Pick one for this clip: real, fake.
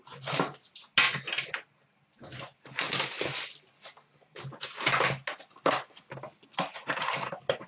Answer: real